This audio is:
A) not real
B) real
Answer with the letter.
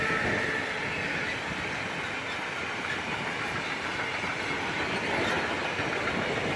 B